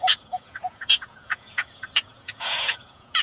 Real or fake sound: fake